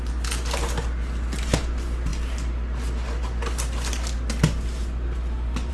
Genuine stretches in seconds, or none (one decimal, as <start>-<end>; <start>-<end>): 0.0-5.7